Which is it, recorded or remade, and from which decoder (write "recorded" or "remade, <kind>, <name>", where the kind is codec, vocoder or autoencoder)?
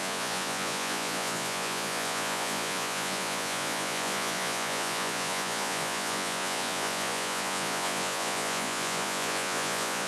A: remade, vocoder, Vocos